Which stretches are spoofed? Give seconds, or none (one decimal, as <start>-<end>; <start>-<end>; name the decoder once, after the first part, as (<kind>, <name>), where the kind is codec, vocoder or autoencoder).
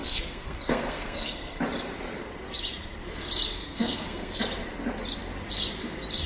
0.0-1.6 (codec, SNAC); 3.6-4.4